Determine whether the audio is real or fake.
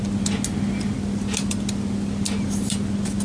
real